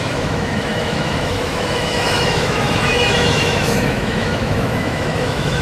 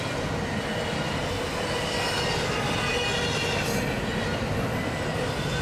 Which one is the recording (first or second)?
second